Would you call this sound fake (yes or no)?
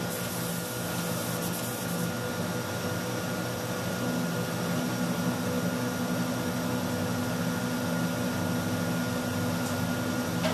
no